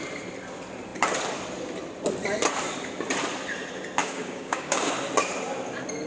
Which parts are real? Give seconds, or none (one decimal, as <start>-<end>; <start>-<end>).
0.0-4.0; 4.9-6.1